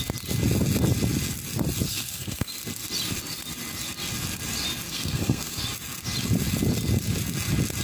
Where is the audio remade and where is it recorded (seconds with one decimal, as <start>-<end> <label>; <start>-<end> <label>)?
0.0-1.9 recorded; 1.9-2.5 remade; 2.5-4.9 recorded; 4.9-5.6 remade; 5.6-7.8 recorded